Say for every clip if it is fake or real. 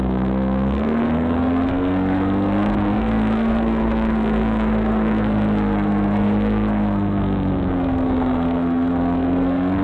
fake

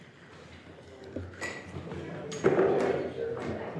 real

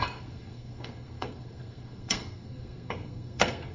fake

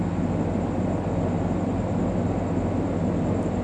real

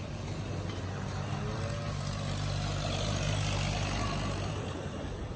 real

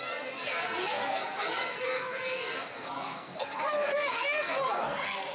fake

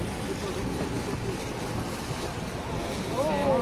real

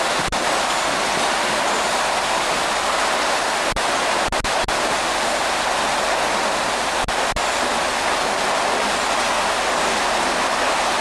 real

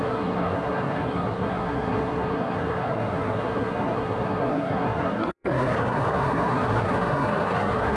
fake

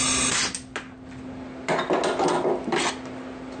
real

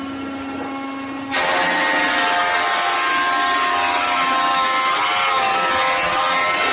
real